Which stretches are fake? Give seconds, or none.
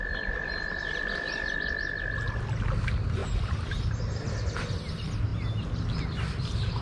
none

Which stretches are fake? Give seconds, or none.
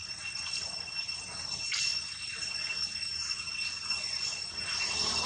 none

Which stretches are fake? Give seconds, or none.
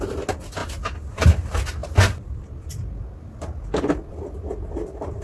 none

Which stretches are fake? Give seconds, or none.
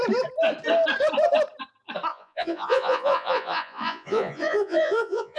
2.1-5.4 (vocoder, Vocos)